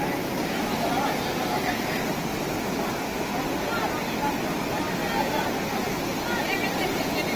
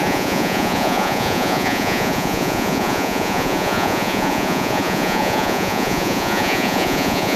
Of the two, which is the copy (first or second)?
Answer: second